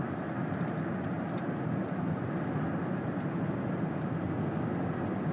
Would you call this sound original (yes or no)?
yes